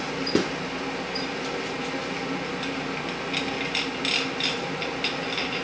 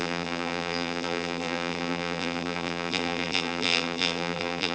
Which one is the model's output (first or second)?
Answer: second